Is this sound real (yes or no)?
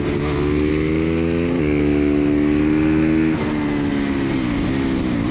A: yes